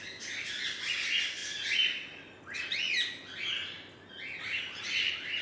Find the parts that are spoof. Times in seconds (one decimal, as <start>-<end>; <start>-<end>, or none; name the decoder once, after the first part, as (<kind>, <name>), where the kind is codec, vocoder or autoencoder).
none